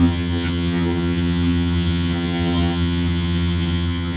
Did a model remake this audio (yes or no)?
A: yes